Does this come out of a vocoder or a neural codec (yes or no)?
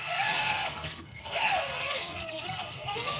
yes